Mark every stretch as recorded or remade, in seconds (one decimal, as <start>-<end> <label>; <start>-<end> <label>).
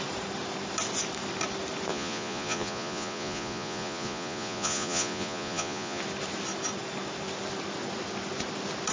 0.0-1.9 recorded; 1.9-6.0 remade; 6.0-8.9 recorded